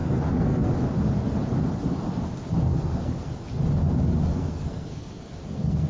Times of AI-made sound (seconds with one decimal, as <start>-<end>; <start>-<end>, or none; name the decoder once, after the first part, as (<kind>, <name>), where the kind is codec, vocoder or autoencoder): 0.0-0.7 (codec, SNAC); 2.7-3.3; 4.3-5.9